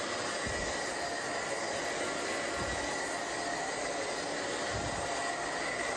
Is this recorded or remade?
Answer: recorded